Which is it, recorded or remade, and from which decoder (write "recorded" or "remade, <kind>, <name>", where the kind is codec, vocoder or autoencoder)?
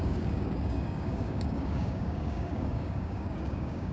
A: remade, codec, DAC